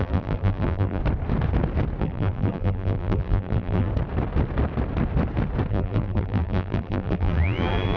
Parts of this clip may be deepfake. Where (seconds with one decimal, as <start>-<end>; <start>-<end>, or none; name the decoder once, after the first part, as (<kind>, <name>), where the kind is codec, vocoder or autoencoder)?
0.0-1.0 (vocoder, BigVGAN v2); 2.0-3.9; 5.7-8.0